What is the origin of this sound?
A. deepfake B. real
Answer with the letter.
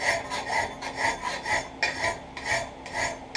B